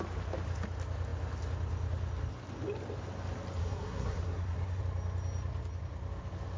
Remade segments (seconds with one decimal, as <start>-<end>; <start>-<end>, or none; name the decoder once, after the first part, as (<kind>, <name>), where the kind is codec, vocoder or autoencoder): 3.6-4.8 (codec, SNAC)